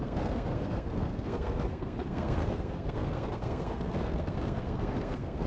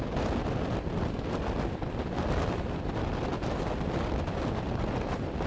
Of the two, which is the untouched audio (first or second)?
second